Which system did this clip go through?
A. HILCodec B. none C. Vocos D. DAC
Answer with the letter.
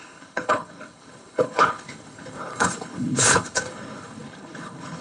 A